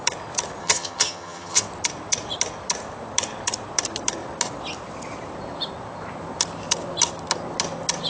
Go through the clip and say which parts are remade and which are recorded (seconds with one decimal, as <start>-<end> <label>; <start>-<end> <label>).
0.0-0.6 recorded; 0.6-1.6 remade; 1.6-8.1 recorded